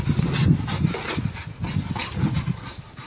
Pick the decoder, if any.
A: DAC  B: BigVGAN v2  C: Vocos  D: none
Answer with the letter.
D